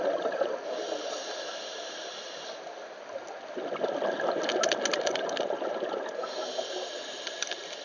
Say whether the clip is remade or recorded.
recorded